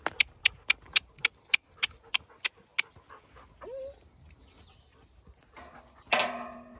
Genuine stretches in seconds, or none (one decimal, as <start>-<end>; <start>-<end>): 0.0-1.2; 2.1-6.8